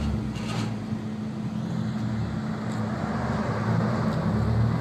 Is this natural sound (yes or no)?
yes